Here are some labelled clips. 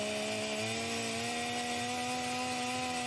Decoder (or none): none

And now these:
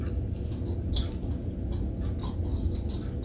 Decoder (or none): none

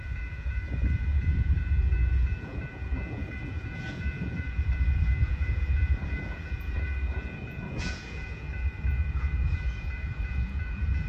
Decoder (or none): vocoder, Vocos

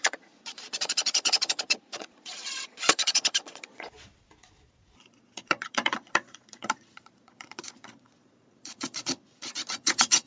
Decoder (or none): vocoder, Vocos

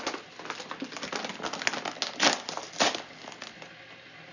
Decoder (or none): none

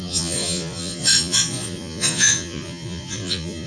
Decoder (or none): vocoder, Vocos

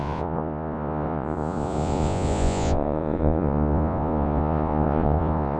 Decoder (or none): vocoder, Vocos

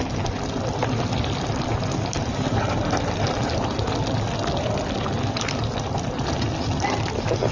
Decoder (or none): none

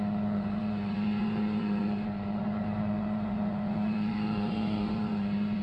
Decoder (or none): vocoder, Vocos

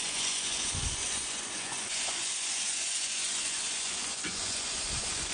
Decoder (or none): vocoder, Vocos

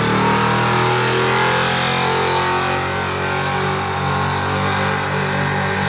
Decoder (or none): none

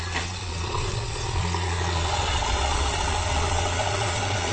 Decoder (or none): vocoder, Vocos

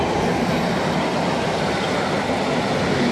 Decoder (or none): none